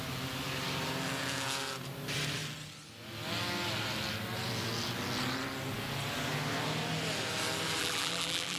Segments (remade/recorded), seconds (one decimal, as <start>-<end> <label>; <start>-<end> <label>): 0.0-7.8 recorded; 7.8-8.6 remade